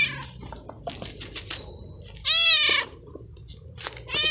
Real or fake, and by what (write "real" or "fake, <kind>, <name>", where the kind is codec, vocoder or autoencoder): real